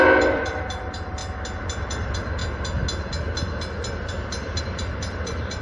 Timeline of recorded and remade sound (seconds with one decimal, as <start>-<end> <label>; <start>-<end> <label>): 0.0-1.2 remade; 1.2-1.9 recorded; 1.9-2.4 remade; 2.4-4.6 recorded; 4.6-5.6 remade